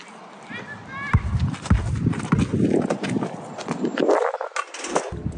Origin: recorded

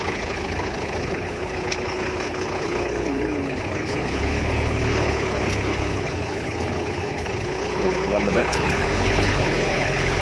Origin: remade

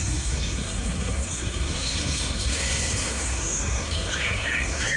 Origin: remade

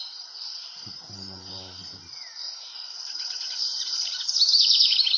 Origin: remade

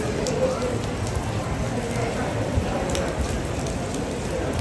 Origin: recorded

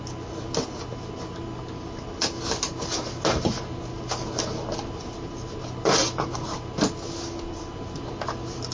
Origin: recorded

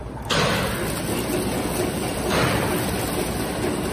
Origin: recorded